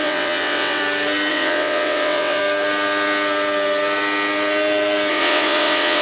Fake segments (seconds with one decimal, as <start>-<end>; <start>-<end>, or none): 0.0-0.8; 1.3-2.4; 5.1-6.0